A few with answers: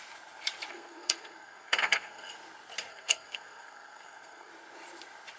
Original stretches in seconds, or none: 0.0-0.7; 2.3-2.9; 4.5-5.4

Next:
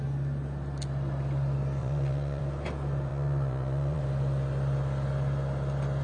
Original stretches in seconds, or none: 0.0-1.8; 2.4-3.1; 4.0-6.0

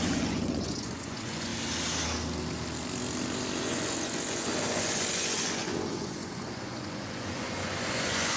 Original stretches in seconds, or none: 1.5-3.6

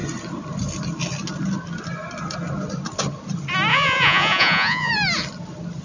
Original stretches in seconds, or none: 0.0-3.7; 4.9-5.8

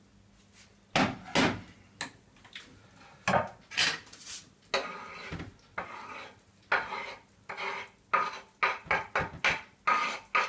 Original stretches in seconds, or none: 0.0-10.5